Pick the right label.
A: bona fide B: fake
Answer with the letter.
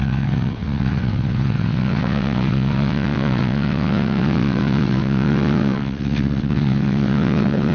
B